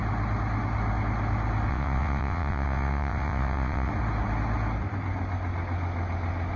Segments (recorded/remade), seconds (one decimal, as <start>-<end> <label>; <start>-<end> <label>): 0.0-1.7 recorded; 1.7-3.9 remade; 3.9-6.6 recorded

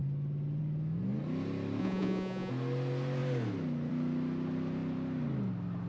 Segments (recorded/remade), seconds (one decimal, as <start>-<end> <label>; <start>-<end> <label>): 0.0-1.8 recorded; 1.8-2.5 remade; 2.5-5.9 recorded

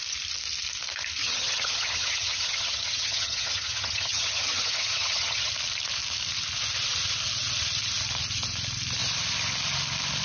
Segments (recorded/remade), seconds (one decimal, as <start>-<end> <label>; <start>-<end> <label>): 0.0-1.2 recorded; 1.2-5.5 remade; 5.5-10.2 recorded